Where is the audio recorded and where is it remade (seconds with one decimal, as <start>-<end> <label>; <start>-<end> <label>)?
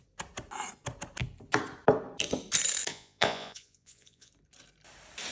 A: 0.0-2.9 recorded; 2.9-4.3 remade; 4.3-5.3 recorded